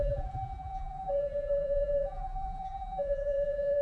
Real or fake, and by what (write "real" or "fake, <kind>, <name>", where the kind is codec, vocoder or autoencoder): fake, vocoder, BigVGAN v2